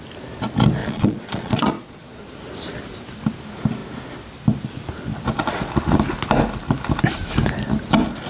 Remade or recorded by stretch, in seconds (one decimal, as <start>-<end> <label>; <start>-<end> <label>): 0.0-0.8 recorded; 0.8-2.2 remade; 2.2-8.3 recorded